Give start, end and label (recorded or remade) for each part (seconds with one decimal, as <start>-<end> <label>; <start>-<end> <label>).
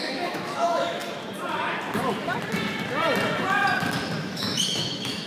0.0-1.0 remade; 1.0-4.2 recorded; 4.2-5.3 remade